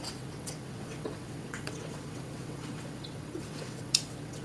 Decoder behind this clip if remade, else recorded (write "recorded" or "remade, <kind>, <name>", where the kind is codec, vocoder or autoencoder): remade, vocoder, WaveNeXt